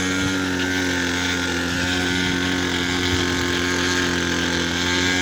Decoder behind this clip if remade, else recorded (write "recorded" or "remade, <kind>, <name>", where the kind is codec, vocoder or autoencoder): recorded